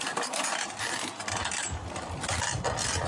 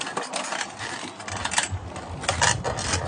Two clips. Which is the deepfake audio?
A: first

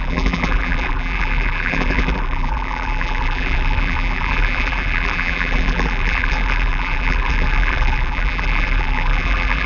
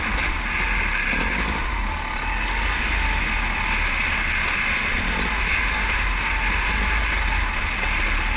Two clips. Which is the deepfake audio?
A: first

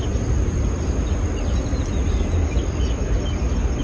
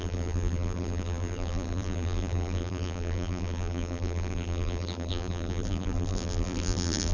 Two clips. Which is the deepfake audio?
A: second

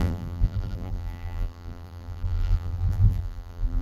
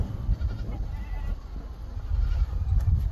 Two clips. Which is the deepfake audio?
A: first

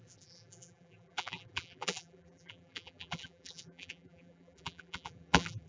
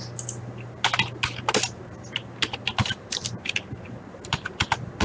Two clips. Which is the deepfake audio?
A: first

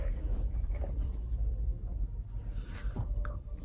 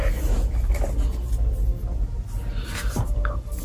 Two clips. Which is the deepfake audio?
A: first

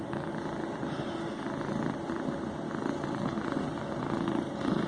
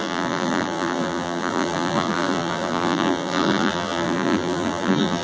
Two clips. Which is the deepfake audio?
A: second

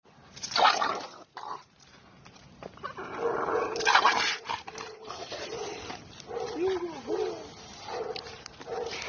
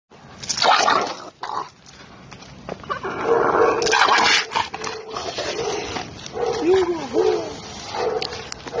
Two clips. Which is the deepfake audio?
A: first